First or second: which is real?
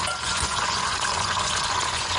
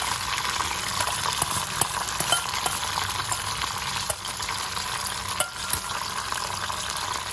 second